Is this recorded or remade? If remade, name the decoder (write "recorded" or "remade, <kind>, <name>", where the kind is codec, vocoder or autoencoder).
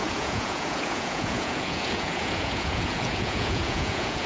remade, vocoder, Vocos